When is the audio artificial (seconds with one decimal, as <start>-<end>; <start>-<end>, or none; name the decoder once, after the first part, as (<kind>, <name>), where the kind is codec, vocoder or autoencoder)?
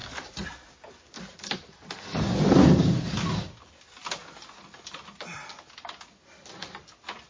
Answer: none